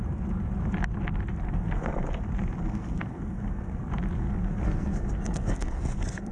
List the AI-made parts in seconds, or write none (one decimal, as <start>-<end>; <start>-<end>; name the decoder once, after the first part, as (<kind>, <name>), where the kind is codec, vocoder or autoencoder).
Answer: 1.5-2.2 (codec, SNAC); 2.6-3.8; 4.2-6.3